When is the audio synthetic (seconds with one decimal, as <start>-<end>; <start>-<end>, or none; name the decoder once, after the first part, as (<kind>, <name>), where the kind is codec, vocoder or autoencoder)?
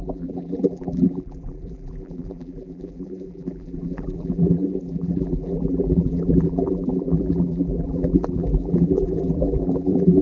0.0-10.2 (vocoder, BigVGAN v2)